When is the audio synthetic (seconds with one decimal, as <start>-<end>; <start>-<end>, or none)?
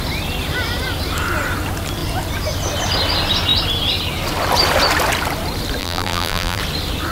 5.8-6.6